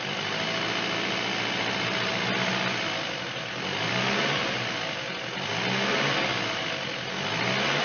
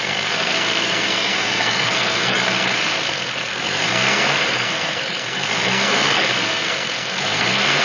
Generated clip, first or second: second